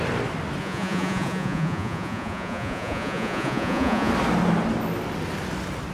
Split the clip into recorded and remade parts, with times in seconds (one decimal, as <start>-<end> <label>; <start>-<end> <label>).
0.0-0.6 recorded; 0.6-4.1 remade; 4.1-5.9 recorded